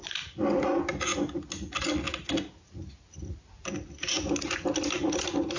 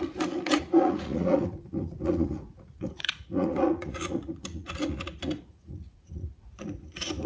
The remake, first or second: second